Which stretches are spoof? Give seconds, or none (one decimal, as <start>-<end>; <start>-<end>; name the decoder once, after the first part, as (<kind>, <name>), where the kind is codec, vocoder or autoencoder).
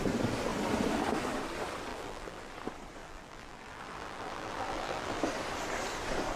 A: 1.9-2.5 (vocoder, BigVGAN v2); 3.0-5.2